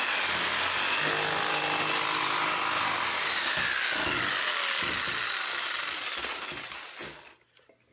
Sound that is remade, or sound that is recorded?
recorded